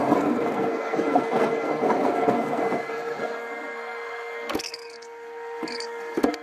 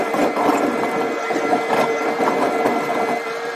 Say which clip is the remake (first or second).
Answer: first